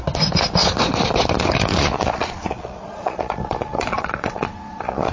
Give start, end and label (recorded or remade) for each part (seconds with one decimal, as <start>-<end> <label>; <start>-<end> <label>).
0.0-1.7 recorded; 1.7-5.1 remade